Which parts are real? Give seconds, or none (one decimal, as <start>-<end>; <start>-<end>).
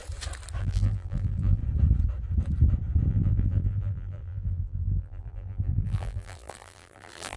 0.0-0.6; 1.6-3.1